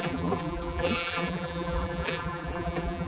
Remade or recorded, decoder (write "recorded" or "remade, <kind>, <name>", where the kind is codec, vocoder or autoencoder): remade, vocoder, BigVGAN v2